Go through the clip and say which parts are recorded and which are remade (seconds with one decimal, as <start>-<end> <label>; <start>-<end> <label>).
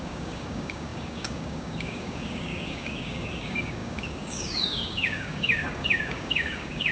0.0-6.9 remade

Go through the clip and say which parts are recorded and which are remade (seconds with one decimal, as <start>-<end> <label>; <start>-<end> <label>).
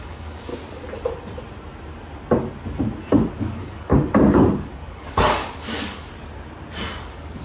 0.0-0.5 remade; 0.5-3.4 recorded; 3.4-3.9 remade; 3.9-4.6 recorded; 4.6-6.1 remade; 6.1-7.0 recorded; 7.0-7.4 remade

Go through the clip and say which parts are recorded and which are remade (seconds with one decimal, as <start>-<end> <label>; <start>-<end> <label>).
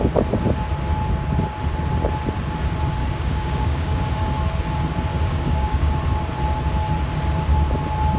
0.0-3.0 recorded; 3.0-4.1 remade; 4.1-5.1 recorded; 5.1-5.9 remade; 5.9-8.2 recorded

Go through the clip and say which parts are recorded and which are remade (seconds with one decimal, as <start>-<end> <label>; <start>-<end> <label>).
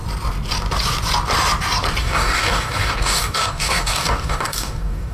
0.0-2.0 recorded; 2.0-5.1 remade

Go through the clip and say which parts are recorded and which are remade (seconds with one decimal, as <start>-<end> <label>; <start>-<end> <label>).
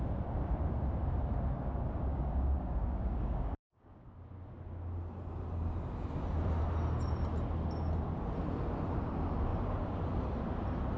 0.0-2.1 recorded; 2.1-4.1 remade; 4.1-11.0 recorded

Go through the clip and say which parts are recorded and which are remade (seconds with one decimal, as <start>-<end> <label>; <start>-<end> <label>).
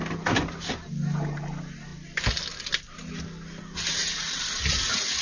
0.0-5.2 recorded